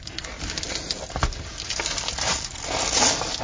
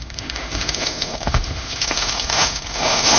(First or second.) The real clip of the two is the first